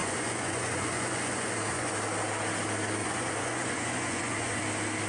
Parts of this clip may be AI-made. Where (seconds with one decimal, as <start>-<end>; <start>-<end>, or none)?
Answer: 0.0-1.9; 3.0-4.6